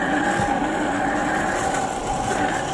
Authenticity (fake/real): real